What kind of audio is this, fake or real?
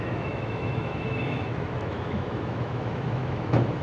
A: fake